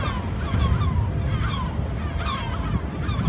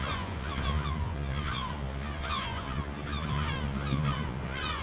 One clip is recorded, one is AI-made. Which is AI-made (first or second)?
second